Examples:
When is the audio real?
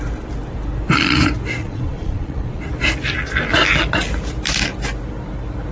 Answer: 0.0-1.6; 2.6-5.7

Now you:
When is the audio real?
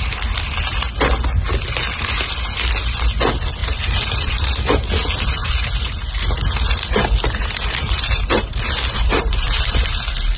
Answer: 0.0-3.6; 4.5-5.4; 9.6-10.4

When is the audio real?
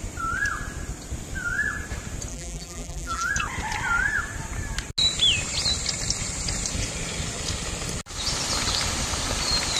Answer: 0.0-2.3; 3.3-9.8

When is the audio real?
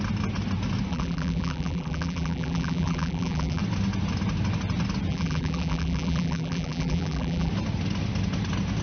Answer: 0.0-0.9; 3.6-5.1; 7.5-8.8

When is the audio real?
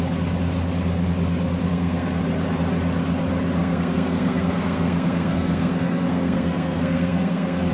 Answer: 0.0-1.6; 2.2-3.6